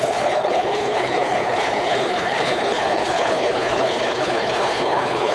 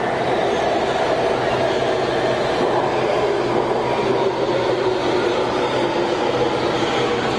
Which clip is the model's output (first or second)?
first